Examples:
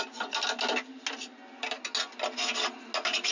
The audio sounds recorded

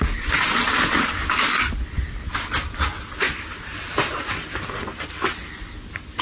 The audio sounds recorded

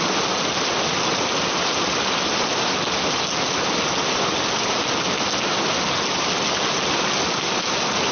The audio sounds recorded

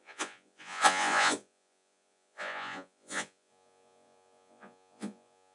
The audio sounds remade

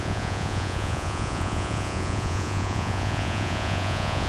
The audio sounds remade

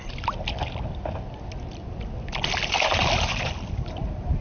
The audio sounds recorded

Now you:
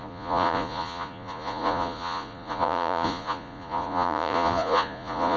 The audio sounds remade